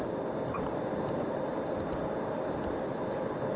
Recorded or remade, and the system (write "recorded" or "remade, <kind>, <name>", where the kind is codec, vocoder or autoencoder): recorded